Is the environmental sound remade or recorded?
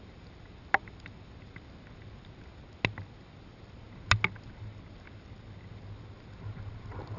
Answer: recorded